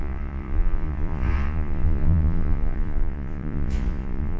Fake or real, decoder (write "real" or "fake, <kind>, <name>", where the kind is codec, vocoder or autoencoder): fake, vocoder, Vocos